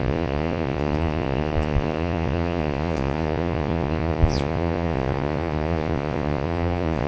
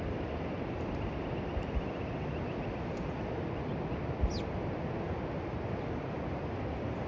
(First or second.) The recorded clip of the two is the second